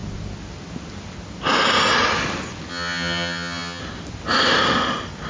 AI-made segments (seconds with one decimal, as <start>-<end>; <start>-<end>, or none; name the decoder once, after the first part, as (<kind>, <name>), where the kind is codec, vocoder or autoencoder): 2.7-3.8 (vocoder, HiFi-GAN)